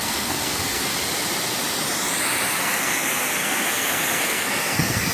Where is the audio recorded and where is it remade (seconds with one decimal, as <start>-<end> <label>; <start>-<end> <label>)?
0.0-0.9 remade; 0.9-2.5 recorded; 2.5-5.1 remade